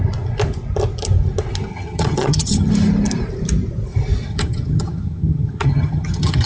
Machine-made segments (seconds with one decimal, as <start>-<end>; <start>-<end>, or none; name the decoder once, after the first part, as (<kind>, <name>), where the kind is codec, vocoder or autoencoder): 1.7-2.7 (vocoder, HiFi-GAN); 4.3-6.5